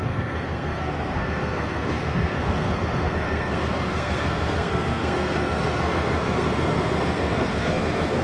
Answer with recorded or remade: remade